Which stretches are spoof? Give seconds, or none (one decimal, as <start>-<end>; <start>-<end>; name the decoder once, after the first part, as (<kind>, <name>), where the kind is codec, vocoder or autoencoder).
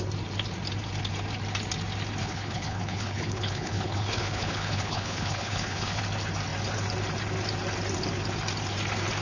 2.2-6.0 (codec, HILCodec)